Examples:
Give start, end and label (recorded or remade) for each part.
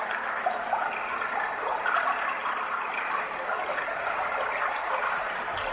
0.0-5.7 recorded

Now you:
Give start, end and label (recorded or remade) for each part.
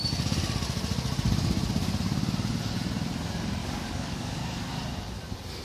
0.0-3.6 recorded; 3.6-4.7 remade; 4.7-5.6 recorded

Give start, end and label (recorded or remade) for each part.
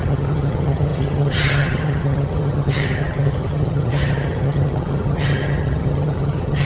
0.0-6.6 remade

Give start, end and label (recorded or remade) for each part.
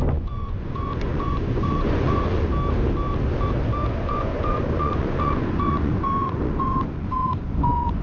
0.0-2.5 remade; 2.5-4.1 recorded; 4.1-8.0 remade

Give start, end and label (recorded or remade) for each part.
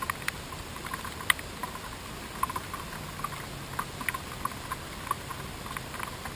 0.0-6.4 recorded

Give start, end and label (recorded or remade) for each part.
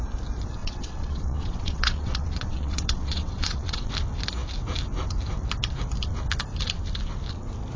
0.0-0.6 recorded; 0.6-3.9 remade; 3.9-7.8 recorded